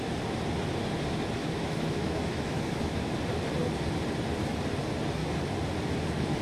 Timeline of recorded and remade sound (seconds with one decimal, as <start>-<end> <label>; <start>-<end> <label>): 0.0-1.4 recorded; 1.4-3.1 remade; 3.1-6.4 recorded